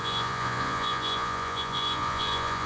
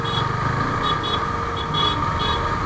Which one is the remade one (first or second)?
first